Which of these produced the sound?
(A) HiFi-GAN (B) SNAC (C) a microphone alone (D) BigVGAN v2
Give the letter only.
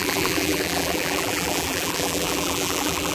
D